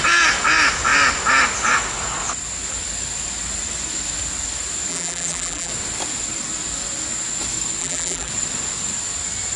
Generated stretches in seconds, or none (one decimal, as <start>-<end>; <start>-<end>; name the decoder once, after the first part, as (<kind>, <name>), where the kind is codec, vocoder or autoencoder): 4.9-5.7 (vocoder, BigVGAN v2); 7.8-8.3